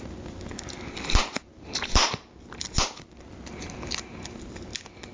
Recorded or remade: recorded